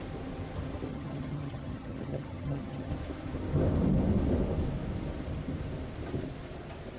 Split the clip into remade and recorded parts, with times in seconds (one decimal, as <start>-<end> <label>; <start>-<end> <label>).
0.0-0.9 recorded; 0.9-2.9 remade; 2.9-7.0 recorded